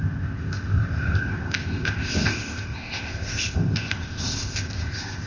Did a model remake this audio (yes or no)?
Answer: yes